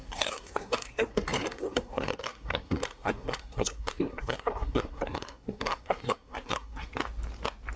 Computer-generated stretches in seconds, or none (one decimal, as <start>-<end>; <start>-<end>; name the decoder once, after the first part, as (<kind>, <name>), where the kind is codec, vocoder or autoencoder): 0.0-6.9 (codec, SNAC)